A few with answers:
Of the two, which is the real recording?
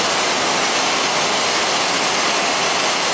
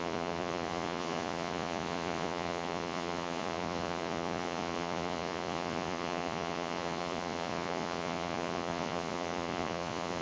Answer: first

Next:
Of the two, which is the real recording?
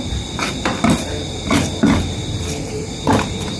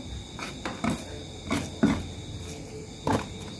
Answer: second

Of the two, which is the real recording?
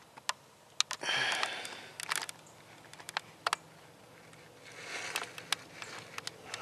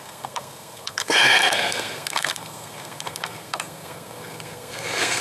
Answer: first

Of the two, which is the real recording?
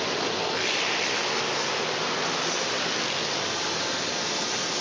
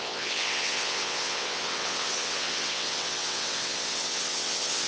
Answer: first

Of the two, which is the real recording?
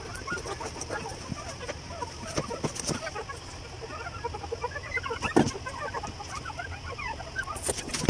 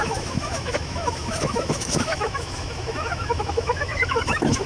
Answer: first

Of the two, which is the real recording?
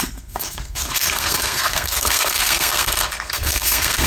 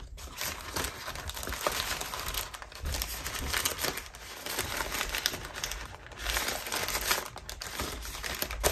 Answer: second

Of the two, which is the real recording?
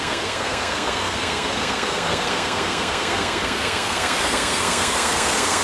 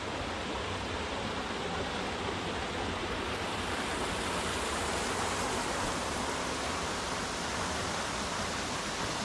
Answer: second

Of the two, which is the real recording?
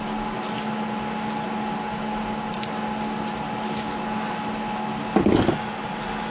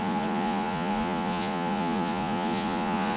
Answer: first